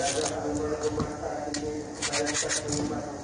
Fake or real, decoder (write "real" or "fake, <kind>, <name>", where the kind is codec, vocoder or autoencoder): real